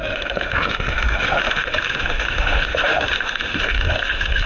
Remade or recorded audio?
remade